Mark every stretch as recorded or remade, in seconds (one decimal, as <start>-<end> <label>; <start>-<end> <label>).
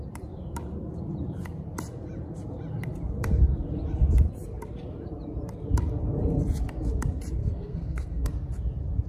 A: 0.0-7.4 recorded; 7.4-8.3 remade; 8.3-9.1 recorded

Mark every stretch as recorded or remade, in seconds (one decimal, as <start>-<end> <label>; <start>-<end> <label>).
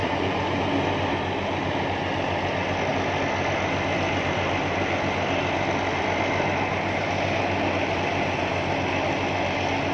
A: 0.0-0.6 remade; 0.6-9.9 recorded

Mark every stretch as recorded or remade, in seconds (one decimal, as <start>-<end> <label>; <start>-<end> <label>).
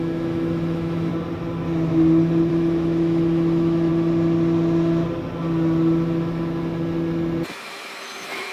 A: 0.0-1.1 remade; 1.1-2.5 recorded; 2.5-3.9 remade; 3.9-7.5 recorded; 7.5-8.5 remade